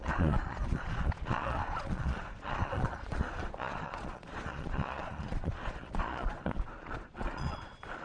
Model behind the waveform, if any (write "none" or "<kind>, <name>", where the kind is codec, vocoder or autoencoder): vocoder, Vocos